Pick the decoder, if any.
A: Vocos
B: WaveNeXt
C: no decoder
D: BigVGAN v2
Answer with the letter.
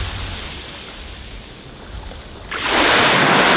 C